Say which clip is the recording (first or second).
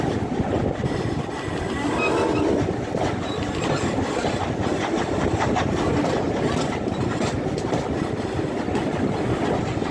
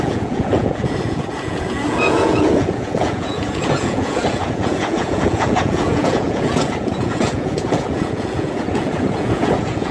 first